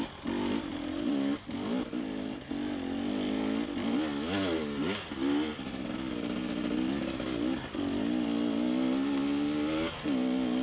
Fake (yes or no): no